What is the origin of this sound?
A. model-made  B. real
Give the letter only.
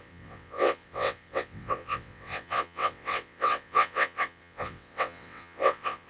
A